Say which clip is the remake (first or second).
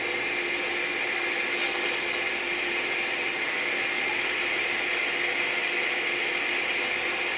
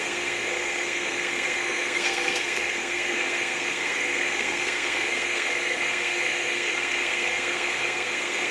second